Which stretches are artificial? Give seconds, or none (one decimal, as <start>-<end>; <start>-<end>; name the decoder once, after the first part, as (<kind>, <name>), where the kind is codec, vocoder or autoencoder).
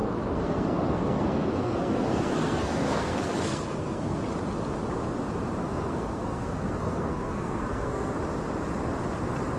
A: 0.0-4.2 (codec, SNAC); 5.6-8.1